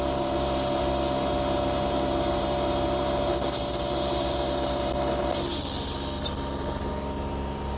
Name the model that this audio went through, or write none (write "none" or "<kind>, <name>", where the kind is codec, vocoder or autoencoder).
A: none